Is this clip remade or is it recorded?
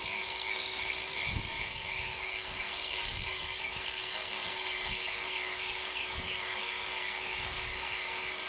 remade